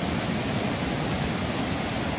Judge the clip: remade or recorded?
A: recorded